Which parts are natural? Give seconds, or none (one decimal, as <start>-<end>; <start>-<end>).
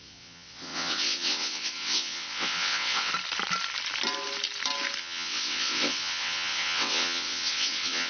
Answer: 3.1-5.0